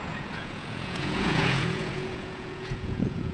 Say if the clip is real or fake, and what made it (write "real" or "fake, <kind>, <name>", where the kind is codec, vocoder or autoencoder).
fake, vocoder, Vocos